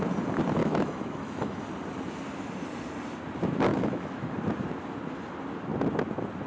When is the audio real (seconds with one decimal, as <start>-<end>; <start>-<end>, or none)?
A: 0.0-0.6; 1.6-3.7; 4.3-6.5